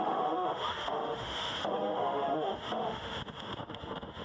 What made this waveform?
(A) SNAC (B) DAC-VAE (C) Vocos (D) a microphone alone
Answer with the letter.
B